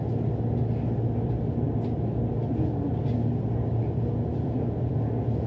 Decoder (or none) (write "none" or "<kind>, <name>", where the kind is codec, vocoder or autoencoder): none